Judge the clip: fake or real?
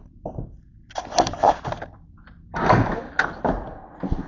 real